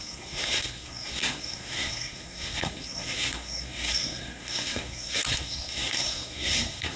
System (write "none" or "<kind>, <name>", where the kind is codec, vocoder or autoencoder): codec, SNAC